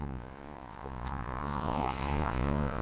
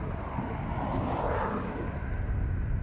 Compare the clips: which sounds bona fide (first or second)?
second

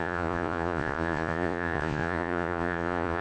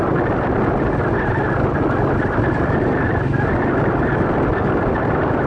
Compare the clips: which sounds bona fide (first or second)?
second